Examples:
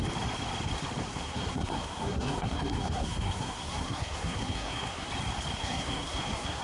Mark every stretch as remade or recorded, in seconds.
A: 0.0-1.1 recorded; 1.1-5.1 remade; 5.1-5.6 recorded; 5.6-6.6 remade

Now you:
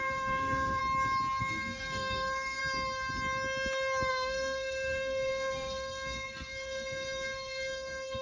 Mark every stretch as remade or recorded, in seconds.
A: 0.0-0.8 remade; 0.8-1.4 recorded; 1.4-2.6 remade; 2.6-4.1 recorded; 4.1-8.2 remade

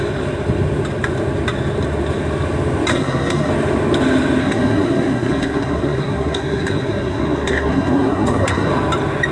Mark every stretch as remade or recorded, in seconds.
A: 0.0-2.9 recorded; 2.9-3.5 remade; 3.5-4.4 recorded; 4.4-8.7 remade; 8.7-9.3 recorded

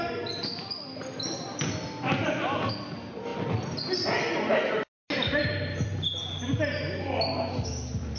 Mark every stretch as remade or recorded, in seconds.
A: 0.0-8.2 recorded

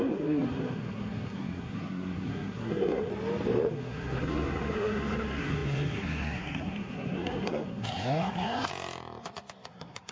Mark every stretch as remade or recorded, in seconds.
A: 0.0-3.1 remade; 3.1-3.7 recorded; 3.7-8.7 remade; 8.7-9.7 recorded; 9.7-10.1 remade

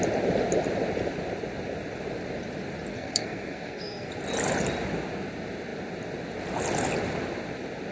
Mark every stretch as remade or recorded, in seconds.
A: 0.0-2.9 recorded; 2.9-4.1 remade; 4.1-7.9 recorded